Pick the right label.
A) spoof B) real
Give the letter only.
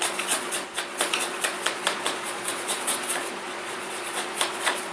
A